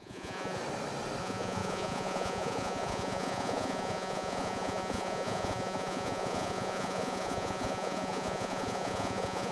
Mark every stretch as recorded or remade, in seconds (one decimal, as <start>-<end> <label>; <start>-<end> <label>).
0.0-0.6 remade; 0.6-1.2 recorded; 1.2-9.5 remade